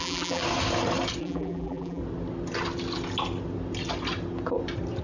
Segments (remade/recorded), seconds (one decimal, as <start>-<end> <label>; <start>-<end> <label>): 0.0-0.4 remade; 0.4-1.2 recorded; 1.2-2.0 remade; 2.0-5.0 recorded